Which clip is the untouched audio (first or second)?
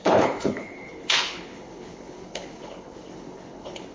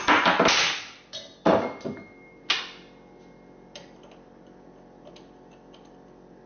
second